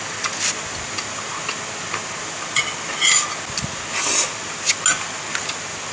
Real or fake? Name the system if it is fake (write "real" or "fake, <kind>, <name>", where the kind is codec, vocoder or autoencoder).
real